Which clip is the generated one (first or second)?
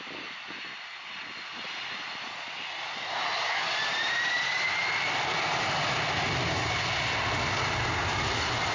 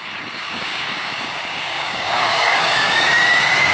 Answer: second